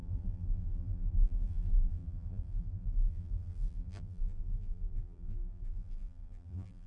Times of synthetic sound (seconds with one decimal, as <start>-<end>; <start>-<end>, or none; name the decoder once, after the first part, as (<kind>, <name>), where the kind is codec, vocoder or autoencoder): 0.0-6.9 (vocoder, BigVGAN v2)